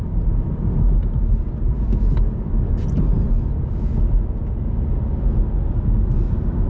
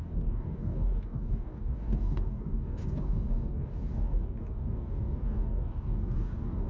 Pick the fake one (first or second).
second